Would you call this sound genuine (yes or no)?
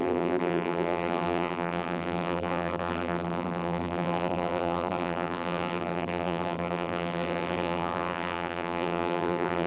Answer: no